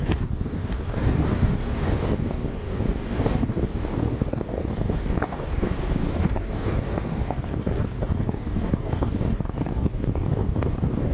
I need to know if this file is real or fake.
fake